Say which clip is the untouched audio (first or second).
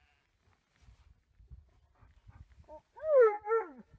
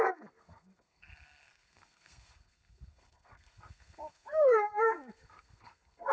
first